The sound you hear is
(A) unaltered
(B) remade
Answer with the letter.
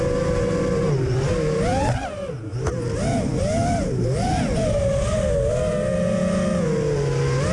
A